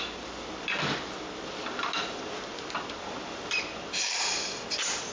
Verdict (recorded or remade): recorded